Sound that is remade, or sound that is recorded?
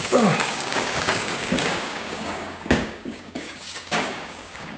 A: remade